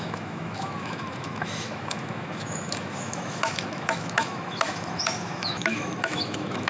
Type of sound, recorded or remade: remade